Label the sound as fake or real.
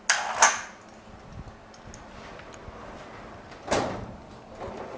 real